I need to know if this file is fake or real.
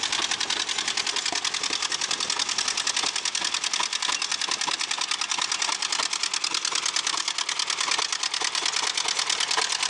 real